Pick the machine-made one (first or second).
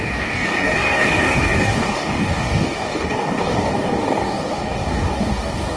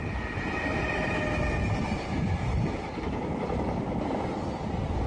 first